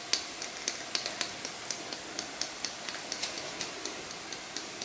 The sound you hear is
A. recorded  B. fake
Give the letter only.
A